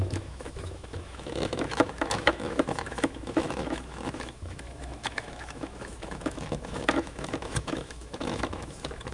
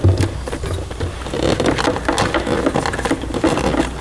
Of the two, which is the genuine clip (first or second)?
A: second